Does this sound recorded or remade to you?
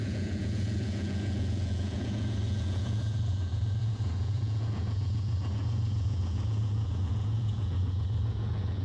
remade